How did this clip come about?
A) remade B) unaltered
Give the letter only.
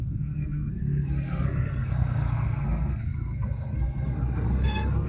A